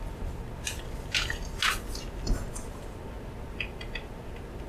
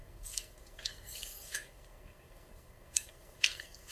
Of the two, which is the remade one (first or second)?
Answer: second